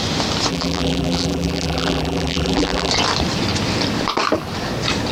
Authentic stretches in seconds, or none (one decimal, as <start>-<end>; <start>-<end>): 0.0-0.5; 2.9-5.1